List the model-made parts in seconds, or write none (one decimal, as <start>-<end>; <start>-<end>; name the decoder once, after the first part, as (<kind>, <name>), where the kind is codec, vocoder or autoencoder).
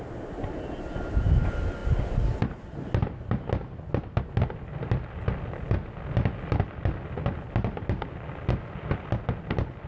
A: none